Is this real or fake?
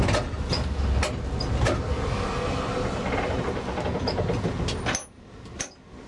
real